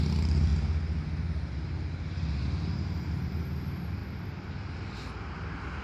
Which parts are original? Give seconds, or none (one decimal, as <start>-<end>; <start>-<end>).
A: 0.0-5.8